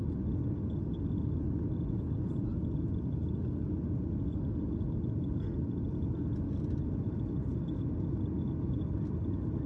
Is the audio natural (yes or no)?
yes